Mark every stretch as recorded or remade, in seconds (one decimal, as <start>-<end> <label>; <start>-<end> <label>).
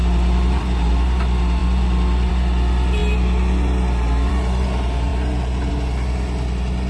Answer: 0.0-6.9 recorded